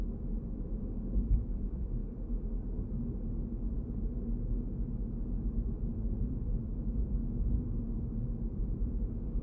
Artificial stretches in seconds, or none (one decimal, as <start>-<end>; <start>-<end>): 0.0-0.8; 1.5-2.0; 5.7-7.2; 8.6-9.4